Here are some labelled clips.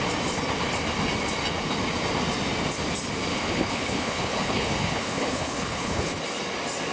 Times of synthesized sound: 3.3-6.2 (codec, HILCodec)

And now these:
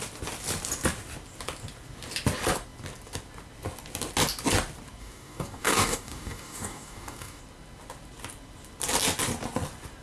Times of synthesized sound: 5.0-7.4 (codec, DAC)

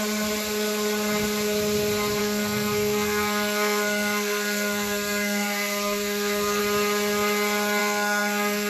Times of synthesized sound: 2.2-6.6 (codec, SNAC); 7.8-8.7

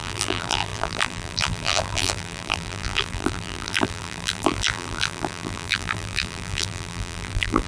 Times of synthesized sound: 0.0-7.7 (vocoder, BigVGAN v2)

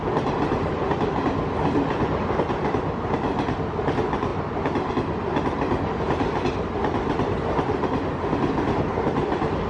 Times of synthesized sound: none

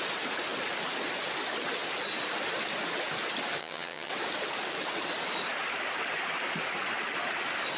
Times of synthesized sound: 3.6-4.1 (vocoder, HiFi-GAN)